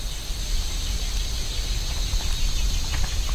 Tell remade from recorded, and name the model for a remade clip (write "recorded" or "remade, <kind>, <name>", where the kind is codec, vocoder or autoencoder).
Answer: recorded